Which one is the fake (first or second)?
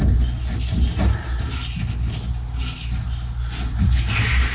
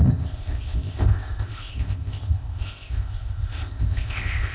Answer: second